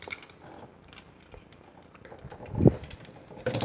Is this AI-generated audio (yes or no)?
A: no